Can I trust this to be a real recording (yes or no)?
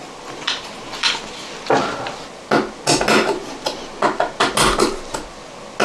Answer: yes